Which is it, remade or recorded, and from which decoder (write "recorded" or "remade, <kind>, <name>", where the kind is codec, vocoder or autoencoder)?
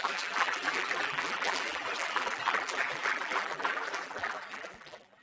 remade, vocoder, BigVGAN v2